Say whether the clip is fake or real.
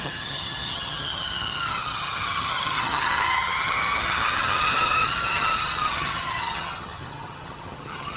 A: fake